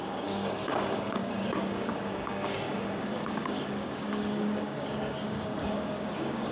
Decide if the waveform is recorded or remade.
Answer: remade